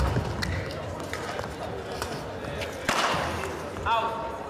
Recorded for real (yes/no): yes